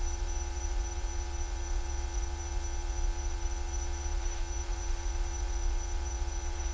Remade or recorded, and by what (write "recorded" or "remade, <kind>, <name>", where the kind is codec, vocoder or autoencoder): remade, vocoder, Vocos